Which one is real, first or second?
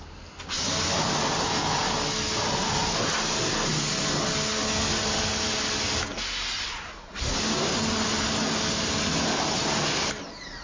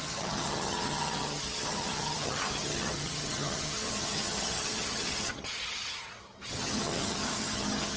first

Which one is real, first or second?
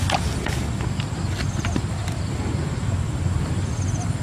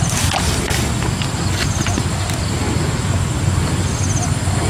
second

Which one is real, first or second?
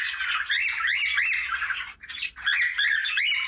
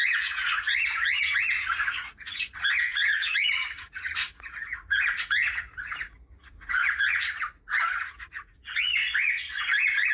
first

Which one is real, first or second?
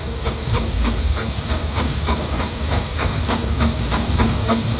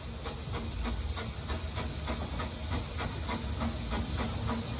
second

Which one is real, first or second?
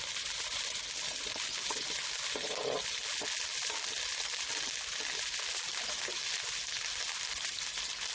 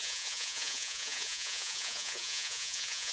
first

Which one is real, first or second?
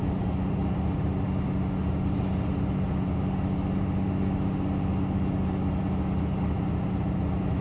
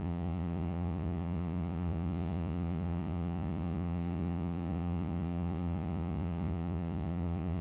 first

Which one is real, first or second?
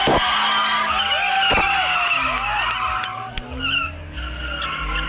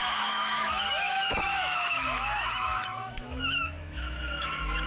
first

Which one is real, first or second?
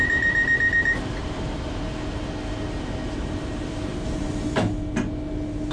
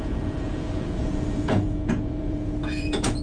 first